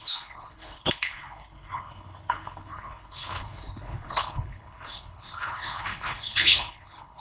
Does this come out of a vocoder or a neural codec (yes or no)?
yes